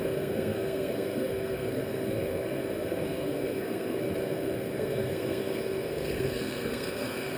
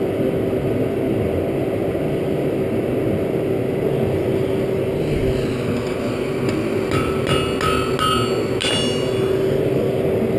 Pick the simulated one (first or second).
first